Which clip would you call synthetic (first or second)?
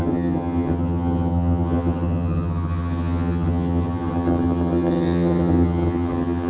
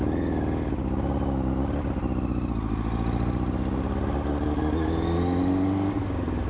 first